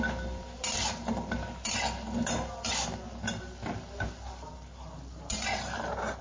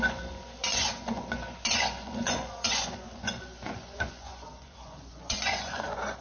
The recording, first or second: first